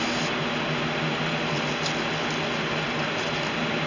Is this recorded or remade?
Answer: recorded